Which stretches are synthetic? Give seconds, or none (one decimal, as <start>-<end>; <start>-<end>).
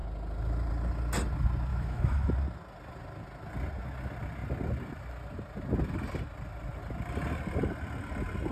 1.7-2.3